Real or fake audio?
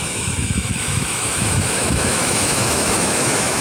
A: fake